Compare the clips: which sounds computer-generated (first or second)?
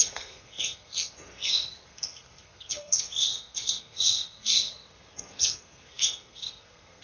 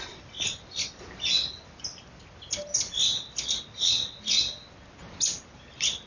first